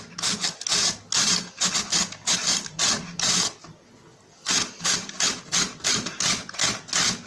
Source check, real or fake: real